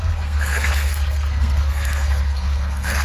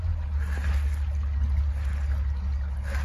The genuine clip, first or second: second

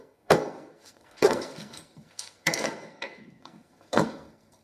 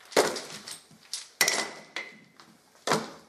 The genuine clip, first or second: second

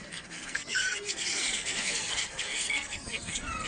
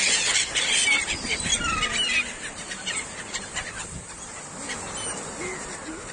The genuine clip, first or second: second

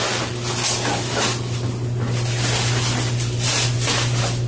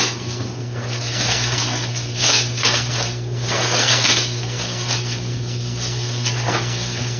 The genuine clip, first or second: first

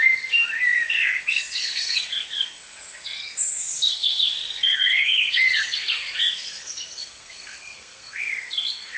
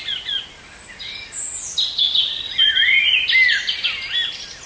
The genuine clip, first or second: second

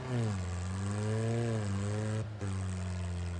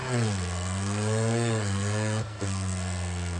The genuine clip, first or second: first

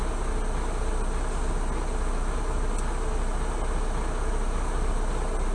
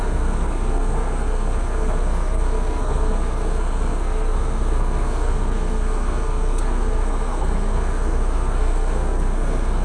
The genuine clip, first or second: first